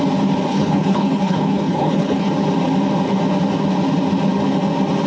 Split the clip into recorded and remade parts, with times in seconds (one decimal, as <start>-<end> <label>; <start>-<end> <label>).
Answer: 0.0-0.5 recorded; 0.5-2.3 remade; 2.3-5.1 recorded